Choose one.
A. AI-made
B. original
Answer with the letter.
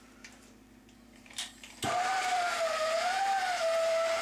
A